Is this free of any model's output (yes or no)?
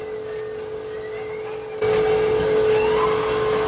yes